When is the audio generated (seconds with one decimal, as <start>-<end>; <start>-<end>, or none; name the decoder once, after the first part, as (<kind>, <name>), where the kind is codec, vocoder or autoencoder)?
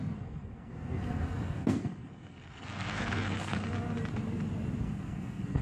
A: 0.0-3.7 (codec, SNAC); 4.8-5.6